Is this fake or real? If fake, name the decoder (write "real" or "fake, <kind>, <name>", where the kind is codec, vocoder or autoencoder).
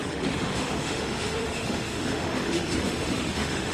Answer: fake, autoencoder, DAC-VAE